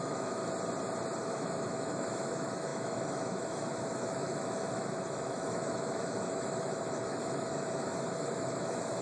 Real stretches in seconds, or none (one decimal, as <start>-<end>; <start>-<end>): 0.4-1.2